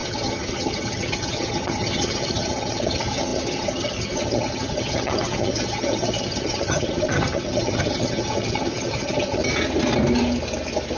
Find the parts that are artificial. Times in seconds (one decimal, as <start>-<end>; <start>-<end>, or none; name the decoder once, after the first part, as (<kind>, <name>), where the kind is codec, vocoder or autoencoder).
0.0-9.4 (vocoder, HiFi-GAN)